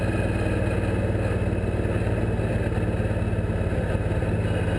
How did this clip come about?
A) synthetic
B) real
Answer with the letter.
B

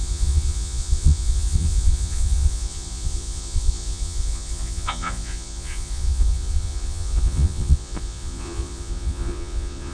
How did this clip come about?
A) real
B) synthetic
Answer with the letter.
B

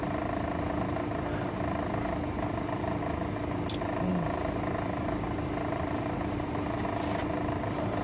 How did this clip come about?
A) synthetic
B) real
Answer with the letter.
B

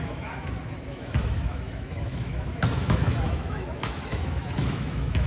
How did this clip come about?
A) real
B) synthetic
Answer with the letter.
B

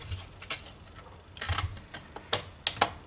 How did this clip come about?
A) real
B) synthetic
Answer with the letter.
A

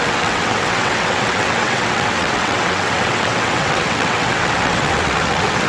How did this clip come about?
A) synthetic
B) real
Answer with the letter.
A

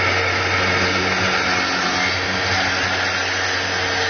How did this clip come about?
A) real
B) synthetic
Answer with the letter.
A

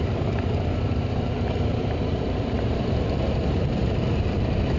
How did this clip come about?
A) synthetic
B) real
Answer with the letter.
A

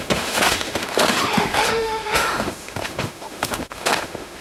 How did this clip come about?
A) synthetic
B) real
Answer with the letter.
A